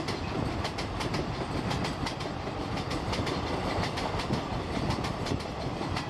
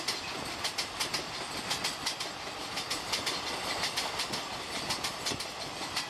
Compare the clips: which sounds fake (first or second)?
first